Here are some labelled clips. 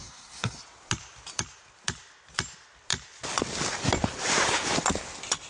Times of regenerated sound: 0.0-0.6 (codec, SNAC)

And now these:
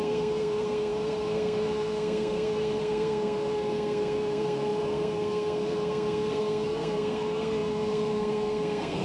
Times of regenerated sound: 0.0-9.0 (codec, SNAC)

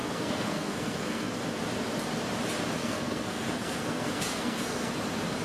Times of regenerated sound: 0.0-1.4 (codec, SNAC); 2.8-4.9

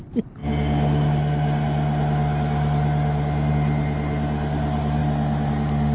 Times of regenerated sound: none

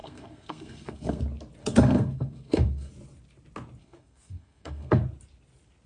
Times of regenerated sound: 0.0-1.2 (codec, SNAC); 1.6-2.9; 3.8-5.0

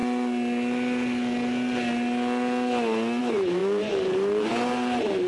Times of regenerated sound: 3.2-5.3 (vocoder, BigVGAN v2)

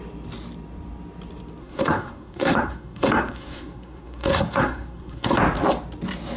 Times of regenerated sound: 1.6-5.4 (codec, SNAC)

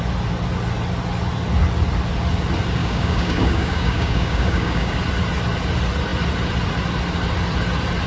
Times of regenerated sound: 2.8-5.0 (codec, DAC)